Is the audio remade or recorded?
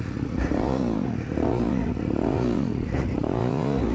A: remade